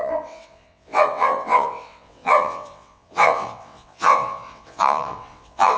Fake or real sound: fake